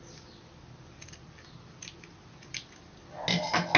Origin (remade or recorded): recorded